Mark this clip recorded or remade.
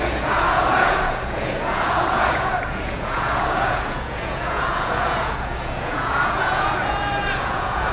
remade